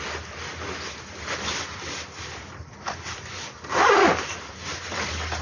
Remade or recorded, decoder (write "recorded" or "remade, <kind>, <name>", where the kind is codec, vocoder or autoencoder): recorded